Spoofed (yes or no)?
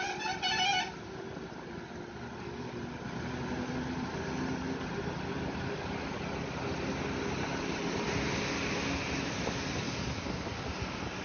no